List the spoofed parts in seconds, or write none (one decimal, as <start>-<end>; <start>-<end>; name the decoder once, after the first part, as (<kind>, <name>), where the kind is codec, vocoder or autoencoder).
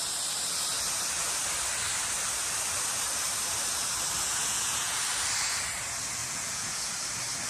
4.3-5.0 (vocoder, Vocos); 6.2-6.9